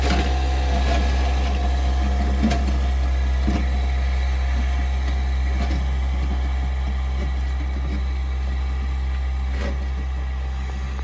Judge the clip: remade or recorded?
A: recorded